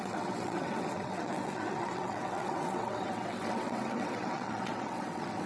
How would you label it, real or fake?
fake